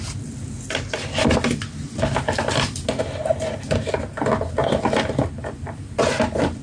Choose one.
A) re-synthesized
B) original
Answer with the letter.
B